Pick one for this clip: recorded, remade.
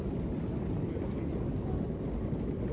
recorded